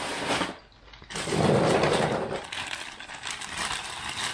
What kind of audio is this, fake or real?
real